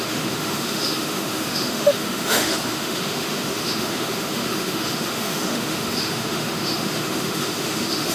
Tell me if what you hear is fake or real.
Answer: fake